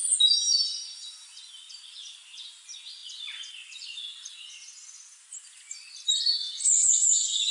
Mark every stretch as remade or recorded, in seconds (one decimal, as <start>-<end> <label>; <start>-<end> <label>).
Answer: 0.0-7.5 recorded